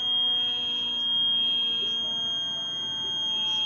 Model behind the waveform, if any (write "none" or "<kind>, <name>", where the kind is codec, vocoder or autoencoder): none